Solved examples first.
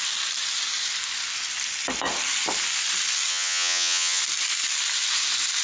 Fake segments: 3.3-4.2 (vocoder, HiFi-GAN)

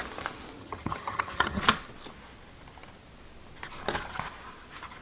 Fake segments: 0.6-1.6 (vocoder, HiFi-GAN)

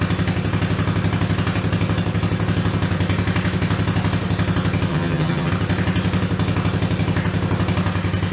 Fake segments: 4.9-5.5 (vocoder, HiFi-GAN)

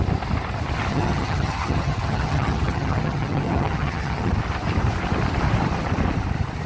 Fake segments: 0.9-4.3 (vocoder, HiFi-GAN)

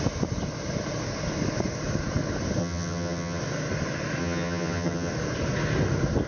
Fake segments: 2.6-3.4 (vocoder, HiFi-GAN); 4.2-5.1